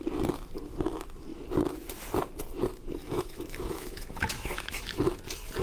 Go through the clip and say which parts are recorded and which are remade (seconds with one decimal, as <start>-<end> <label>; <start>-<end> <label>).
0.0-3.0 recorded; 3.0-5.0 remade; 5.0-5.6 recorded